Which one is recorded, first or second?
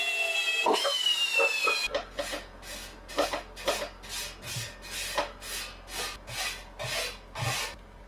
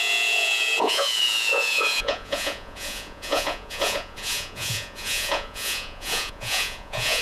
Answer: first